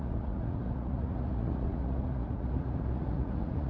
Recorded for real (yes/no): no